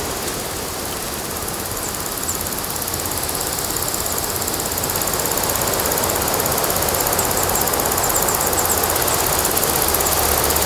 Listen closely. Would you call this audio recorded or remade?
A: recorded